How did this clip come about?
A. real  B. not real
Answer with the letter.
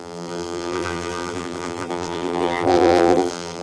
B